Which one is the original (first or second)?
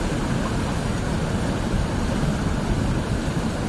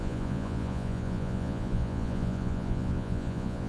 first